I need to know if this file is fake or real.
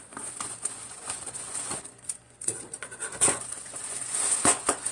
fake